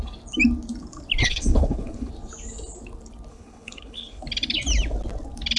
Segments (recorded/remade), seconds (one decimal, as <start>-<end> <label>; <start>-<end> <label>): 0.0-1.2 recorded; 1.2-2.1 remade; 2.1-3.3 recorded; 3.3-4.2 remade; 4.2-5.6 recorded